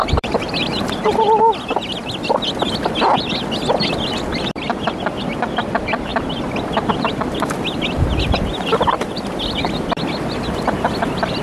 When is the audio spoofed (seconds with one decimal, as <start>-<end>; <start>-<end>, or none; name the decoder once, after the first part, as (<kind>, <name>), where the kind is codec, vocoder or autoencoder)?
0.0-6.1 (vocoder, BigVGAN v2); 6.9-11.4

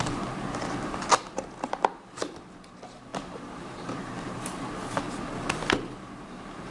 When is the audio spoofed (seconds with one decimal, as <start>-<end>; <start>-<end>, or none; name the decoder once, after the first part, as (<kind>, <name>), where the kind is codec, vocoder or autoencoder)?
3.1-5.0 (vocoder, BigVGAN v2)

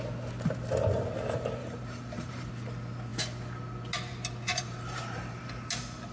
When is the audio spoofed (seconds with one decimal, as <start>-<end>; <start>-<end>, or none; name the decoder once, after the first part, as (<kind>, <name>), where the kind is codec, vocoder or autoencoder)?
1.6-2.5 (vocoder, BigVGAN v2); 4.5-5.4

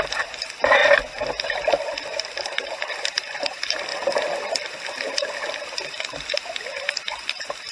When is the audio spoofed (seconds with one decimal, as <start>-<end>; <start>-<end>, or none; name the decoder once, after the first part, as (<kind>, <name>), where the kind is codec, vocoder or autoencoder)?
0.0-0.8 (vocoder, BigVGAN v2); 2.0-3.9; 7.3-7.7